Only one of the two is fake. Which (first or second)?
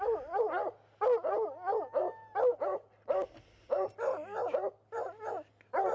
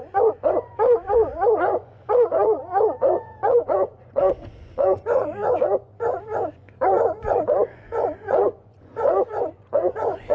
second